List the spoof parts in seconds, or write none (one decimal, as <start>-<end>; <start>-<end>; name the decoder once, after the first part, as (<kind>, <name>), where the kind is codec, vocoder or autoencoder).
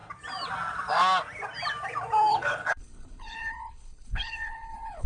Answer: 2.3-5.1 (codec, HILCodec)